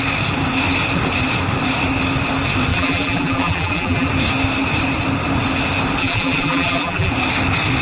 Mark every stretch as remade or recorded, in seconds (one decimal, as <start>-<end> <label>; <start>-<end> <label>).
0.0-2.7 recorded; 2.7-4.1 remade; 4.1-6.0 recorded; 6.0-7.1 remade; 7.1-7.8 recorded